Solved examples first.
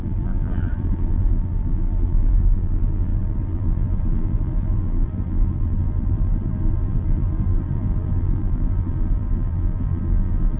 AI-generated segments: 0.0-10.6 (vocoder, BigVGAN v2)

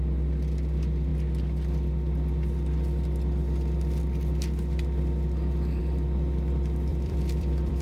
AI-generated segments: 6.9-7.8 (vocoder, BigVGAN v2)

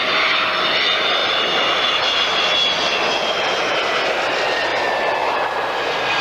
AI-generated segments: none

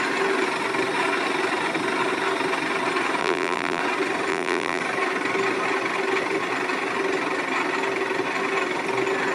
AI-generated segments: 3.2-3.8 (vocoder, BigVGAN v2); 4.3-4.8

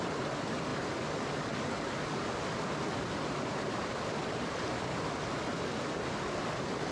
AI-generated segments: none

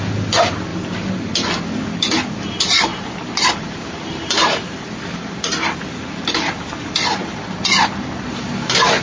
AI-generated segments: 2.9-4.9 (vocoder, BigVGAN v2)

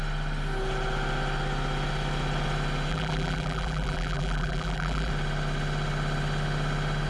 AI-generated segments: 2.9-5.1 (vocoder, BigVGAN v2)